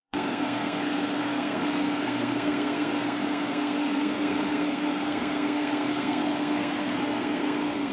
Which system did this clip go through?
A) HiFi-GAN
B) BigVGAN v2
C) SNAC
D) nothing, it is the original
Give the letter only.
C